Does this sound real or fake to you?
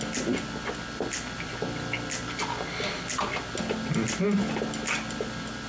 real